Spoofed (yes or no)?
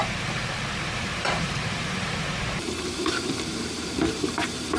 yes